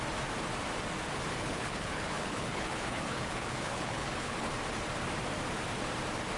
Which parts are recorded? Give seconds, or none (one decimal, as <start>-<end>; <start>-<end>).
0.0-1.4; 4.5-6.4